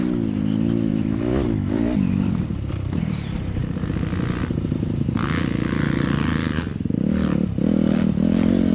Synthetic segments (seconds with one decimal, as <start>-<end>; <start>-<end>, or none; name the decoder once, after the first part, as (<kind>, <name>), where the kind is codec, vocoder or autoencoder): 0.9-2.4 (vocoder, BigVGAN v2)